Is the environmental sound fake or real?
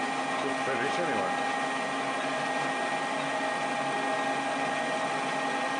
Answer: real